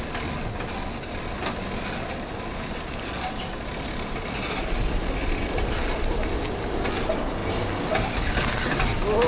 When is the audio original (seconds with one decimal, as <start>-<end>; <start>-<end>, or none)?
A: 0.0-9.3